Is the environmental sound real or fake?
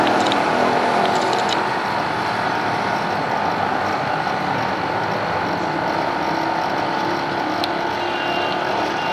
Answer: real